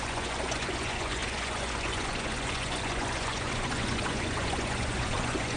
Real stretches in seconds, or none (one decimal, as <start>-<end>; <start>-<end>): none